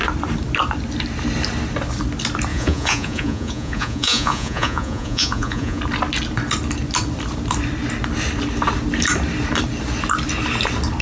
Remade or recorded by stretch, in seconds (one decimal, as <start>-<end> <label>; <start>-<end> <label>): 0.0-2.5 recorded; 2.5-5.8 remade; 5.8-11.0 recorded